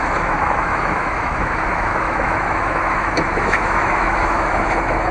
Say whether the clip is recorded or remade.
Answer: remade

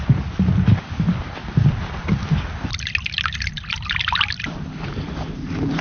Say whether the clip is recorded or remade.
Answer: recorded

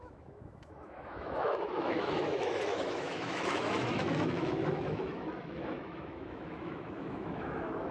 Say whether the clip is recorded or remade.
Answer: remade